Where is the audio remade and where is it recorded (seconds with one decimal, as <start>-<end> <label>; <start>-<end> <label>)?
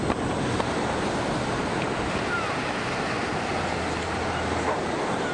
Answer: 0.0-5.3 recorded